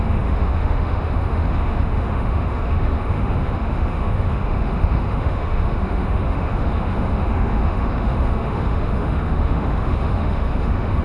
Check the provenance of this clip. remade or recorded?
remade